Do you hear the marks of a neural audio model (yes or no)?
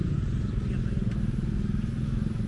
no